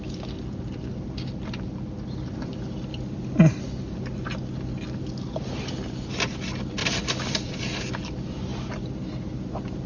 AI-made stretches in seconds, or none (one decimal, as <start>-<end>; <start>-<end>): 2.9-3.6; 6.8-7.6; 8.5-9.1